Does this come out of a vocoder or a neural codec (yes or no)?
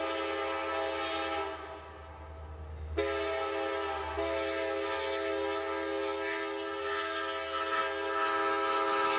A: no